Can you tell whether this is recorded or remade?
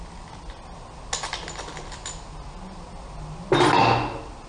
recorded